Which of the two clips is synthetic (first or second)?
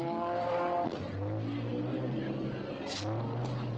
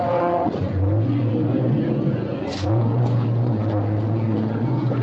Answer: second